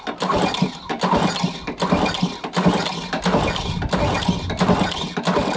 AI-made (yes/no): no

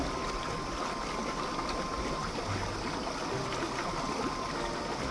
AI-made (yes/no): no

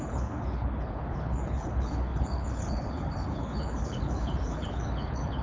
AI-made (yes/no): yes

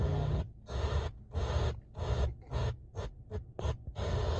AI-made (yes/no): no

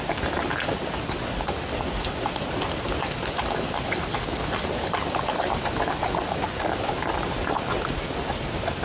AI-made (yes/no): no